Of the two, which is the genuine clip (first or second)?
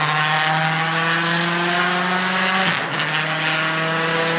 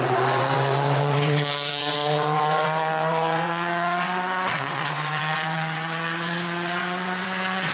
first